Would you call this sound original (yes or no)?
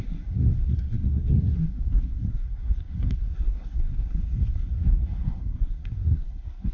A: no